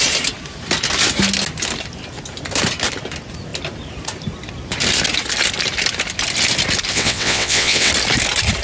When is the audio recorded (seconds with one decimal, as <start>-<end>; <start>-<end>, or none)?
0.0-6.9; 7.9-8.6